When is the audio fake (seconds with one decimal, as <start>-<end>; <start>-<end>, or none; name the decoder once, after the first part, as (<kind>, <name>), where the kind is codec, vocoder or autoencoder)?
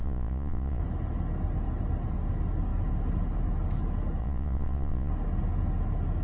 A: 0.0-0.8 (vocoder, Vocos); 4.2-5.1